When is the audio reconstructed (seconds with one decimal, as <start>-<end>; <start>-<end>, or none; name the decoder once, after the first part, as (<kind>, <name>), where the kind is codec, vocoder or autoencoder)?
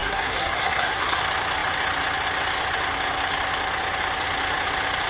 0.0-1.2 (codec, SNAC)